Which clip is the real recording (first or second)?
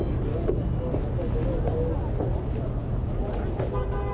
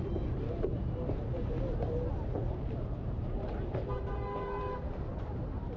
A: first